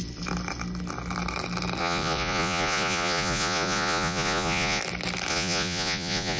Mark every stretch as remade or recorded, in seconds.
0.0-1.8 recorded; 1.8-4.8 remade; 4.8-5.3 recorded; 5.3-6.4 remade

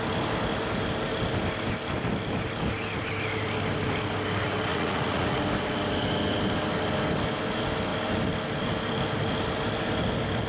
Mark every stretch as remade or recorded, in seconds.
0.0-4.7 recorded; 4.7-5.4 remade; 5.4-10.5 recorded

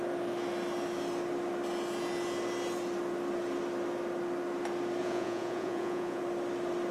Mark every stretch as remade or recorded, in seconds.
0.0-5.0 recorded; 5.0-6.2 remade; 6.2-6.9 recorded

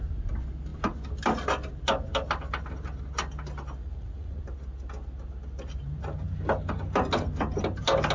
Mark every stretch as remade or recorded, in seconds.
0.0-3.8 recorded; 3.8-4.4 remade; 4.4-8.1 recorded

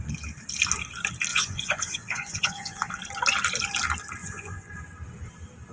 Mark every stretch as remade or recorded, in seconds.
0.0-1.3 recorded; 1.3-2.9 remade; 2.9-4.2 recorded; 4.2-4.7 remade; 4.7-5.7 recorded